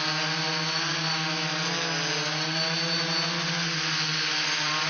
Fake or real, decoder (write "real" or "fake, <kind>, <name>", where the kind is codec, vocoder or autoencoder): real